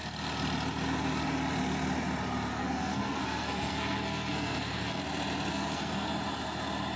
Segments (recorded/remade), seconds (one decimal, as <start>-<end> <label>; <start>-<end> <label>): 0.0-2.5 recorded; 2.5-5.0 remade; 5.0-5.5 recorded; 5.5-6.1 remade; 6.1-7.0 recorded